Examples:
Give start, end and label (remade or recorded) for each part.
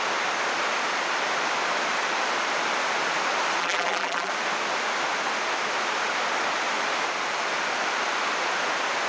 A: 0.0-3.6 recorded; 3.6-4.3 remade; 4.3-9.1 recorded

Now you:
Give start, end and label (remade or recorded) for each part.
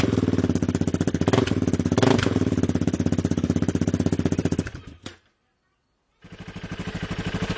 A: 0.0-0.6 recorded; 0.6-5.2 remade; 5.2-7.6 recorded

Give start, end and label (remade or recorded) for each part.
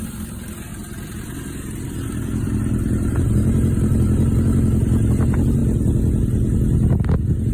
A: 0.0-0.7 remade; 0.7-3.1 recorded; 3.1-5.6 remade; 5.6-7.5 recorded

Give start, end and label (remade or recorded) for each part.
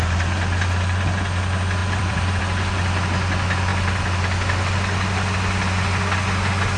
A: 0.0-1.8 recorded; 1.8-2.4 remade; 2.4-6.8 recorded